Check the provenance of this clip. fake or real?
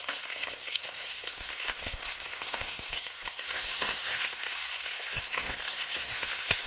fake